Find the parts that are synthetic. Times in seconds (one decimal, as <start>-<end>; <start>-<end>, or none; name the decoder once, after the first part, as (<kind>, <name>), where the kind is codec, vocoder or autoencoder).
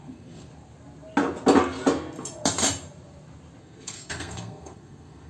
0.0-0.5 (codec, SNAC); 3.6-5.3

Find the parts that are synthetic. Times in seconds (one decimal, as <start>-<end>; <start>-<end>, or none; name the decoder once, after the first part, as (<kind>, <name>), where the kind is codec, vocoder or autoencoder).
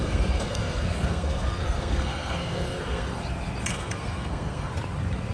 0.0-3.2 (codec, SNAC); 3.7-4.7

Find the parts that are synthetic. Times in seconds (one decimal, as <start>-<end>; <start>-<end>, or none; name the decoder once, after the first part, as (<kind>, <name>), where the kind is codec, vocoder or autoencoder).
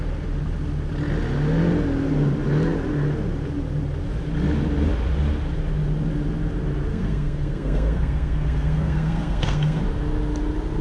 6.9-9.8 (codec, SNAC)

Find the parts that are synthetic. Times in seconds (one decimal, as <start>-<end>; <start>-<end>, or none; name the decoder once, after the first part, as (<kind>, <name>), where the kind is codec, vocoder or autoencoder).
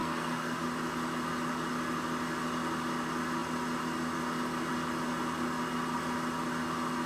0.0-0.6 (codec, SNAC)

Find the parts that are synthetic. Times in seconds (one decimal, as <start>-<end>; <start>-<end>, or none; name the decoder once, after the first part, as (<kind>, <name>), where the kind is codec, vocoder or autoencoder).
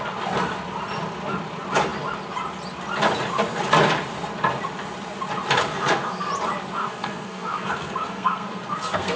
5.7-6.3 (codec, SNAC); 6.8-9.2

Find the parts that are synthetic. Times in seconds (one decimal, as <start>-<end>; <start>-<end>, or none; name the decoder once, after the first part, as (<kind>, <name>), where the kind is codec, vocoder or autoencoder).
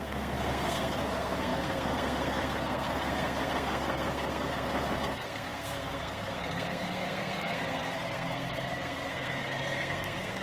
0.0-10.4 (codec, SNAC)